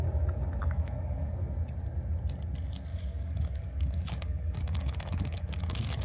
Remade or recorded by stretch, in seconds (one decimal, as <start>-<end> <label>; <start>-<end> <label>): 0.0-0.6 recorded; 0.6-1.3 remade; 1.3-2.9 recorded; 2.9-6.0 remade